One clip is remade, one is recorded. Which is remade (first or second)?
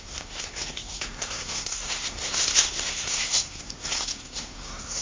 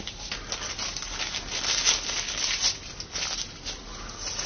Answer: first